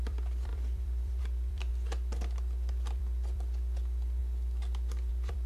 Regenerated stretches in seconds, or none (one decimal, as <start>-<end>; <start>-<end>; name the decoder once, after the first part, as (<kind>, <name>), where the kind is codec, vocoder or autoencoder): 0.0-1.7 (vocoder, BigVGAN v2); 2.7-4.2; 5.1-5.5